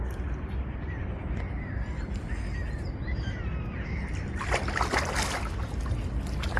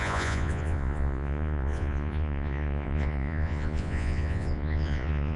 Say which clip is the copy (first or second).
second